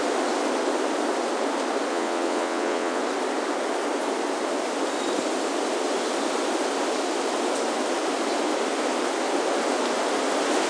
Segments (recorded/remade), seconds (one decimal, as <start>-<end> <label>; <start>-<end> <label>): 0.0-1.9 recorded; 1.9-3.0 remade; 3.0-10.7 recorded